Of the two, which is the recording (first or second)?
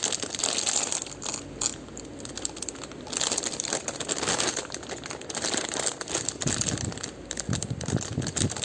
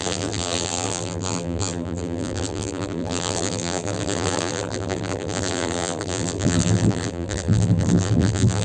first